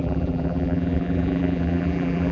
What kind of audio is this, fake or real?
fake